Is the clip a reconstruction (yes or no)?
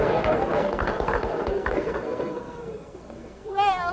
yes